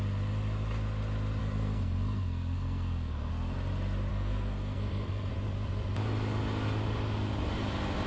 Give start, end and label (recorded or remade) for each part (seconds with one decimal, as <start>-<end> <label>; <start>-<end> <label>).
0.0-1.4 recorded; 1.4-3.3 remade; 3.3-4.1 recorded; 4.1-5.3 remade; 5.3-8.1 recorded